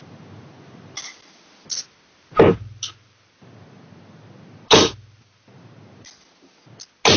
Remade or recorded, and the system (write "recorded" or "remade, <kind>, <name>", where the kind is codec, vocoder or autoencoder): recorded